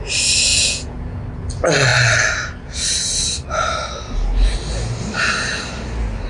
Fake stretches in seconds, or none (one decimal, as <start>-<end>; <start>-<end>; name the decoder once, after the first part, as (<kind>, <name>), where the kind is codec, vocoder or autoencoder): 0.5-1.2 (vocoder, Vocos)